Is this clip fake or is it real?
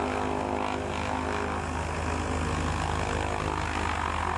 real